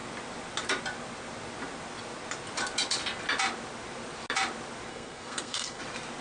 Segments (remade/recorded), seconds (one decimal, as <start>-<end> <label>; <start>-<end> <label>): 0.0-4.9 recorded; 4.9-5.8 remade; 5.8-6.2 recorded